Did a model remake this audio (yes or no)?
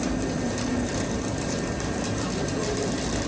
yes